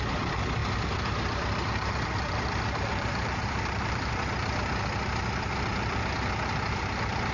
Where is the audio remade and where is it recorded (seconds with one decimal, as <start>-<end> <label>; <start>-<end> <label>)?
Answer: 0.0-0.6 recorded; 0.6-4.1 remade; 4.1-7.3 recorded